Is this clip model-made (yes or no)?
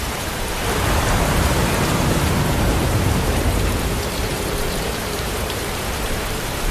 yes